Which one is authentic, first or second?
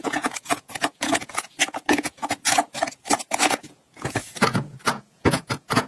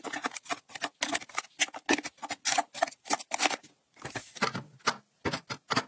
second